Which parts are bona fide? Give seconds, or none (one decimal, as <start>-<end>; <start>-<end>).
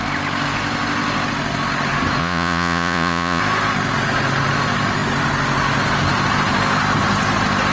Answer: 0.0-2.2; 3.4-7.7